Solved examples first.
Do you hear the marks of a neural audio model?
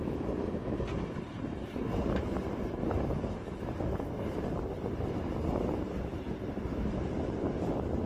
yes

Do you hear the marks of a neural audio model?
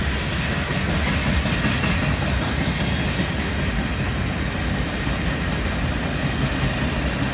no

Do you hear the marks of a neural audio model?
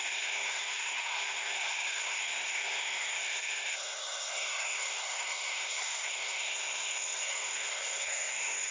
yes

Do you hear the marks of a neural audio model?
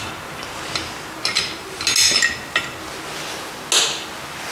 no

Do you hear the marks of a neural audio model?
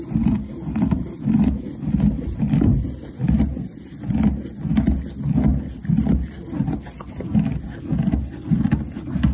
no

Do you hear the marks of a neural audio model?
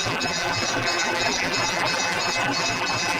yes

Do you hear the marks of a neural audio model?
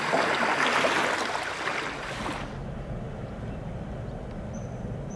no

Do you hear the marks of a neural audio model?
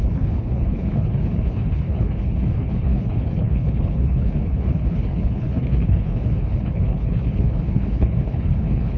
yes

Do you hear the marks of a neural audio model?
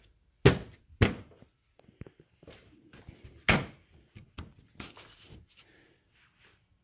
no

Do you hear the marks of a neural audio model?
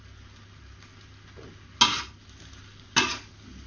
no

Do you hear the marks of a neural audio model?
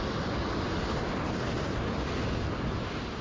no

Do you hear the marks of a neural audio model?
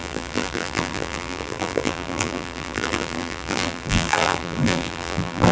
yes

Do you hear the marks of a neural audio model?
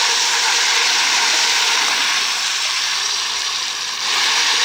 yes